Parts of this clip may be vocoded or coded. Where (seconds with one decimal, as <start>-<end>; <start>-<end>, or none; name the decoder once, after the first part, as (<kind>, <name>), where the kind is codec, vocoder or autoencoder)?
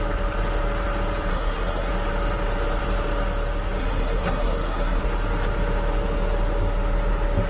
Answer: 1.3-1.9 (codec, SNAC); 3.8-5.0